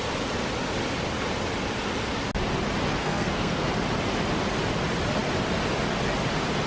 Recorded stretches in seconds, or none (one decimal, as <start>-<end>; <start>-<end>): 0.0-3.0; 3.7-6.7